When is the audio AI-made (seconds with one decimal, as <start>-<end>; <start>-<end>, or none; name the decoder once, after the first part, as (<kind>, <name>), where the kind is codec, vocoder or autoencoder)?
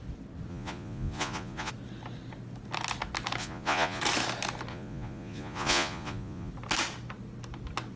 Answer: 0.5-1.7 (vocoder, Vocos); 3.4-4.0; 4.7-6.5